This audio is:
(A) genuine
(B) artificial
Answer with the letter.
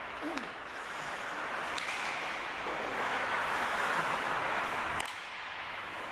B